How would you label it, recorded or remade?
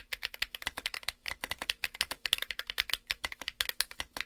remade